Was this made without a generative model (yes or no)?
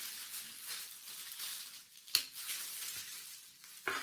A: yes